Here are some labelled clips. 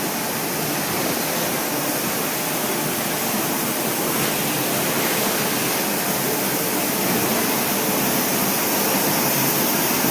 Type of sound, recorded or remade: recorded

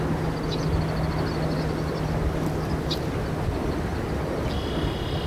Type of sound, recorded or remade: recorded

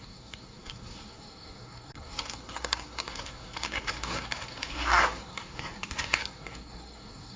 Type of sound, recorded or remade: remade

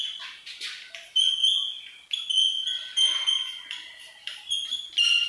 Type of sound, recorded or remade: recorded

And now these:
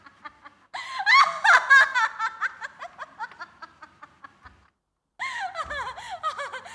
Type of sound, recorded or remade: recorded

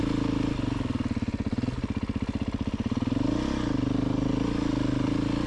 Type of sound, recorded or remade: recorded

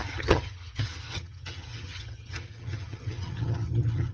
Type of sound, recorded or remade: remade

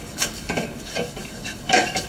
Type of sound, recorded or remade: remade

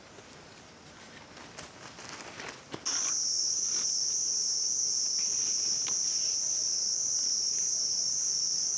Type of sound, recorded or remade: recorded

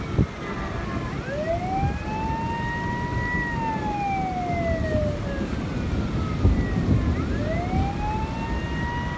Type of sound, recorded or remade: recorded